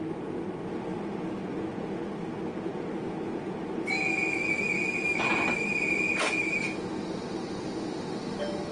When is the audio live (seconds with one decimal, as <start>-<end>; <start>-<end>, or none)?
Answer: 0.0-8.7